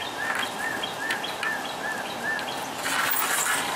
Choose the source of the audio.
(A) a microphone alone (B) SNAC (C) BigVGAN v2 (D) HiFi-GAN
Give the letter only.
A